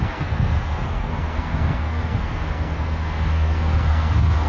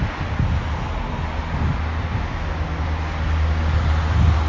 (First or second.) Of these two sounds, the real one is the second